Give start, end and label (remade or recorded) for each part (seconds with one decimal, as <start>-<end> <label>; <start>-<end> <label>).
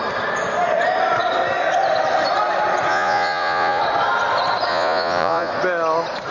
0.0-2.9 recorded; 2.9-3.8 remade; 3.8-4.7 recorded; 4.7-5.5 remade; 5.5-6.3 recorded